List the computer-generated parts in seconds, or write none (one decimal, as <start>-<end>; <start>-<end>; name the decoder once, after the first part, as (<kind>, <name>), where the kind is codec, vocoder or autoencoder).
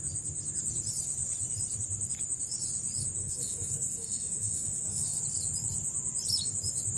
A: 3.2-5.2 (codec, SNAC)